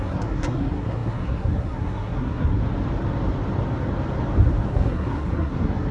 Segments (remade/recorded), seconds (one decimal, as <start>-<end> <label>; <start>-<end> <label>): 0.0-2.6 remade; 2.6-4.7 recorded; 4.7-5.9 remade